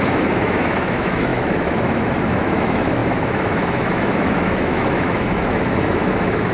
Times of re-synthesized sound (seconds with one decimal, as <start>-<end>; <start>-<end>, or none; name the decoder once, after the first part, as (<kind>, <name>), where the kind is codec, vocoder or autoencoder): 0.0-6.5 (autoencoder, DAC-VAE)